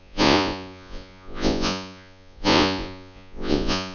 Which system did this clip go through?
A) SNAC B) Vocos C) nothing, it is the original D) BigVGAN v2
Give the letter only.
B